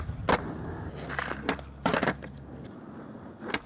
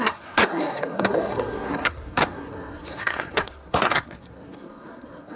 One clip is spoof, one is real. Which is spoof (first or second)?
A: second